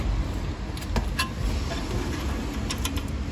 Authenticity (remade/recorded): recorded